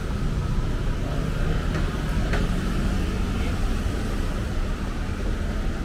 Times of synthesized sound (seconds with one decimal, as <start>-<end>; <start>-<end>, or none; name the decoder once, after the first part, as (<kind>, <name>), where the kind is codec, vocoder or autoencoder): none